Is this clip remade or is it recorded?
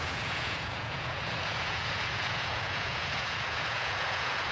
remade